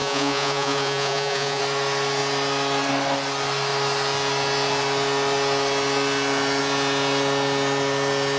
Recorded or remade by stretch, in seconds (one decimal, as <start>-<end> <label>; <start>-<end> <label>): 0.0-1.6 remade; 1.6-8.4 recorded